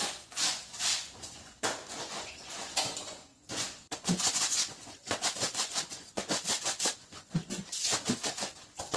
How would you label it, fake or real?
fake